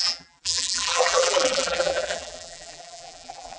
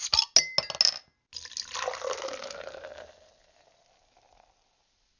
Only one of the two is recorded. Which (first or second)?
second